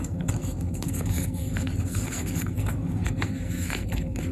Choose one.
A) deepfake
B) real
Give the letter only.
A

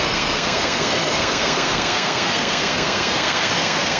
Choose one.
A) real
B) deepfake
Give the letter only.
B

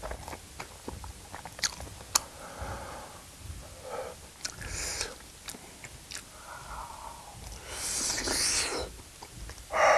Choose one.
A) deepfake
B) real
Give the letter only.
B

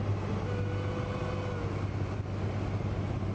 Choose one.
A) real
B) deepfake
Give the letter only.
A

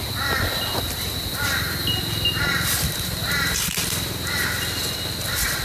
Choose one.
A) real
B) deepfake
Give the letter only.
A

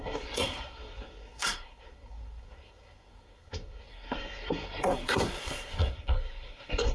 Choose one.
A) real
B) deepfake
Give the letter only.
B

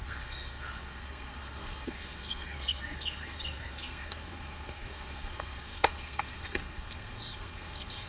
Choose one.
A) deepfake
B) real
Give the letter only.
A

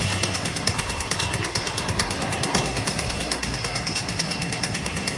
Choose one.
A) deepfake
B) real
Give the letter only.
A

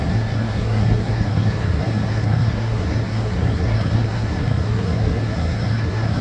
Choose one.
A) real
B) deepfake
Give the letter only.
B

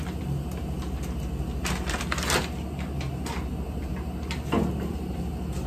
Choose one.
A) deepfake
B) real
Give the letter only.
B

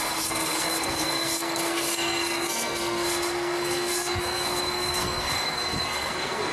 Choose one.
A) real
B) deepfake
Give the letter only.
B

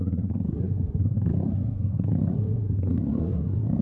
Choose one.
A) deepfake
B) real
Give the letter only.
A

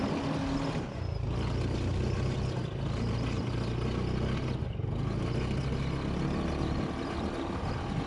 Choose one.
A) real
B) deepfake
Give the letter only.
A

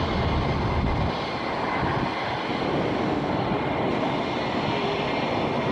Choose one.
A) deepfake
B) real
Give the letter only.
B